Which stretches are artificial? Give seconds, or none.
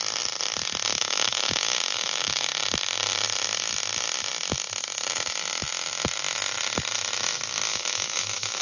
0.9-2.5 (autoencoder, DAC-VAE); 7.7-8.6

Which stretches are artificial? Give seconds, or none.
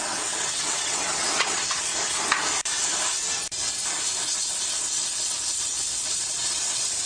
0.0-1.9 (vocoder, WaveNeXt); 6.2-7.1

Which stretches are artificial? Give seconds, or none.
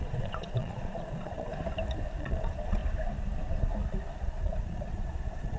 0.0-1.5 (vocoder, Vocos); 2.2-2.8; 4.2-5.6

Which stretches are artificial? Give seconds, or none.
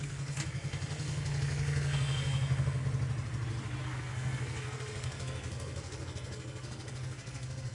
0.0-2.8 (codec, SNAC); 3.8-7.7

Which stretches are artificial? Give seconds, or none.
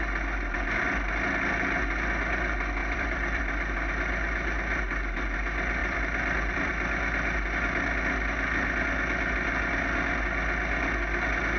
2.8-3.4 (vocoder, BigVGAN v2); 5.8-6.7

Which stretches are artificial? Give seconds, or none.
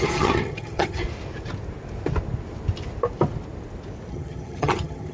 0.0-1.0 (vocoder, HiFi-GAN); 4.1-5.1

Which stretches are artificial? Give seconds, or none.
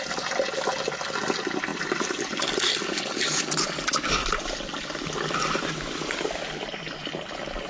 none